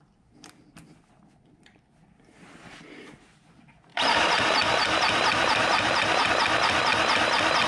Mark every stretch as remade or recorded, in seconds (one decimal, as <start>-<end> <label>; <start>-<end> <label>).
0.0-3.9 recorded; 3.9-6.3 remade; 6.3-7.7 recorded